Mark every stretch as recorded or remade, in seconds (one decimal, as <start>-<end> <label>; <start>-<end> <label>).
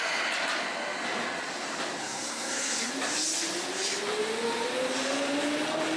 0.0-2.0 recorded; 2.0-2.9 remade; 2.9-6.0 recorded